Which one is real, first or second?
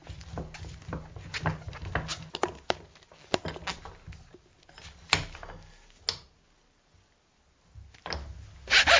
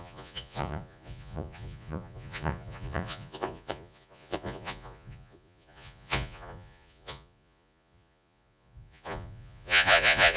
first